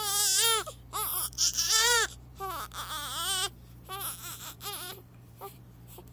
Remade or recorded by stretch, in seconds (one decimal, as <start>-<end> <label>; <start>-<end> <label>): 0.0-1.1 recorded; 1.1-2.4 remade; 2.4-4.3 recorded; 4.3-5.6 remade; 5.6-6.1 recorded

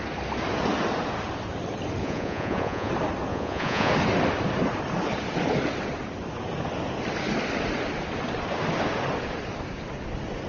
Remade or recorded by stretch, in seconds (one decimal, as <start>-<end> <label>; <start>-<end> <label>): 0.0-2.0 recorded; 2.0-2.9 remade; 2.9-3.3 recorded; 3.3-3.9 remade; 3.9-10.5 recorded

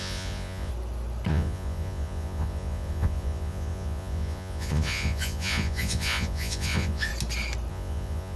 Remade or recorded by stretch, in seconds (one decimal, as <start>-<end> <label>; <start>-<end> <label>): 0.0-0.7 remade; 0.7-1.3 recorded; 1.3-7.1 remade; 7.1-7.7 recorded; 7.7-8.4 remade

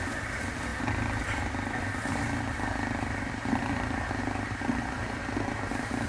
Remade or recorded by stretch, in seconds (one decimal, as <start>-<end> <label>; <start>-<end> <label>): 0.0-6.1 recorded